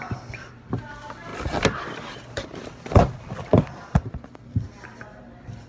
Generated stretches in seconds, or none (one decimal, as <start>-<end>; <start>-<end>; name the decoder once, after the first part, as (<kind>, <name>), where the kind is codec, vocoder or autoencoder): none